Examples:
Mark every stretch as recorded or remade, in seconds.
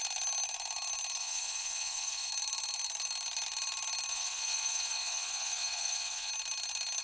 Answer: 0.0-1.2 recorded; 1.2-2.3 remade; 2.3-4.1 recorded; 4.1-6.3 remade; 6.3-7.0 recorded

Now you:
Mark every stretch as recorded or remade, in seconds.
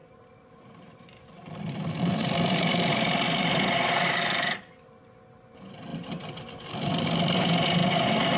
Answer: 0.0-4.9 remade; 4.9-5.9 recorded; 5.9-7.2 remade; 7.2-8.4 recorded